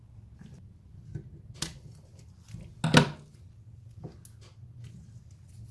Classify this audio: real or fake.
real